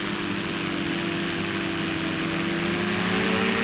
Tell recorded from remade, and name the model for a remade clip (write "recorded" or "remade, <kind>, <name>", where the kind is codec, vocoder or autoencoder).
recorded